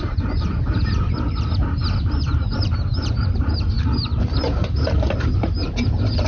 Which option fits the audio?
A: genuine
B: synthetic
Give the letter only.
B